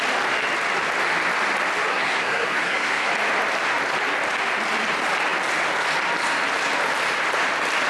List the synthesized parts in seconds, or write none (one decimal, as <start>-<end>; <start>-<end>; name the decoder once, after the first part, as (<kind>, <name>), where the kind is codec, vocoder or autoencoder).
1.9-3.1 (codec, SNAC)